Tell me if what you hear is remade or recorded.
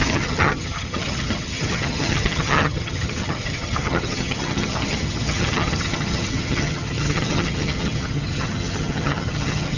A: remade